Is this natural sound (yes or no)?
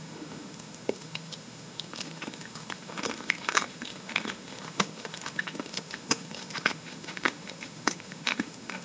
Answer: no